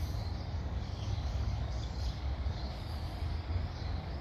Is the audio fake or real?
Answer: fake